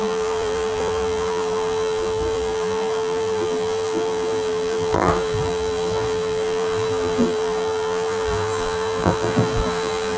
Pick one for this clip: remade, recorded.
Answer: remade